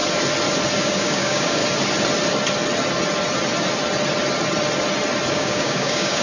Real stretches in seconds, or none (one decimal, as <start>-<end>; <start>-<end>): 0.0-0.8; 1.6-5.3